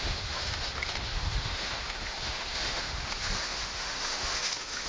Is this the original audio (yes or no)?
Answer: no